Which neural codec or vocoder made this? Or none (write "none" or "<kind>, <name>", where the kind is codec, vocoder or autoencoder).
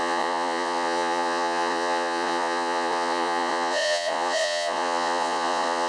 vocoder, Vocos